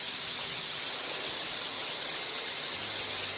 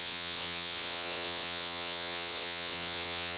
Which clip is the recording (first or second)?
first